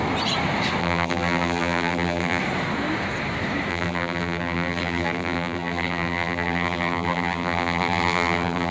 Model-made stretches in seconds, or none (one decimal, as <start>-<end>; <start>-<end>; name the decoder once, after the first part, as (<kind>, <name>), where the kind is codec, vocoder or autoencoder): 0.8-2.4 (vocoder, BigVGAN v2); 3.7-8.7